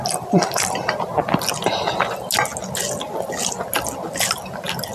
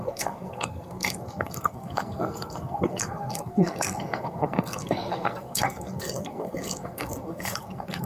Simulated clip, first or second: second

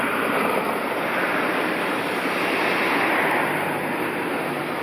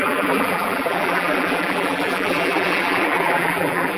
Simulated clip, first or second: second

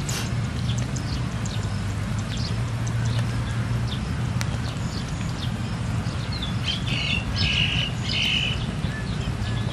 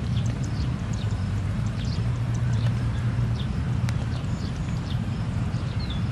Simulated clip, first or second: second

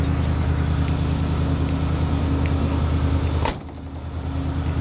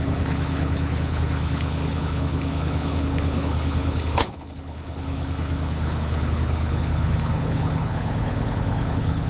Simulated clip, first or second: second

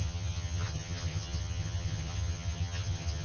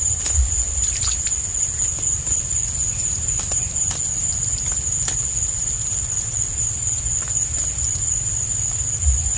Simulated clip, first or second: first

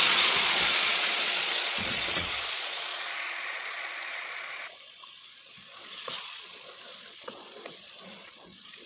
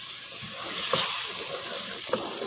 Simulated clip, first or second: first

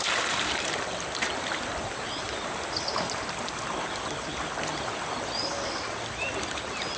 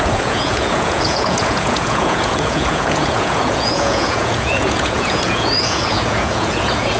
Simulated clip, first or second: second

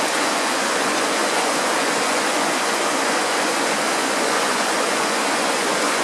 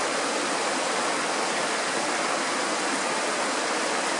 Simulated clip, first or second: first